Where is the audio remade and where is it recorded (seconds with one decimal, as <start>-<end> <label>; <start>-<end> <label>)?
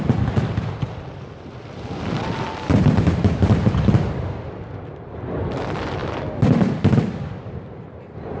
0.0-6.0 remade; 6.0-6.6 recorded; 6.6-8.4 remade